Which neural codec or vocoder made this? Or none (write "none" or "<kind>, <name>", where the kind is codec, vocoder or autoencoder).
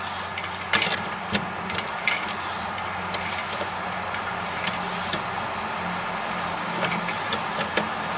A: none